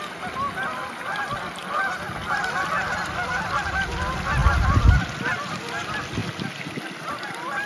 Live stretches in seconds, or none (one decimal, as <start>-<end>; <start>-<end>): 0.0-7.7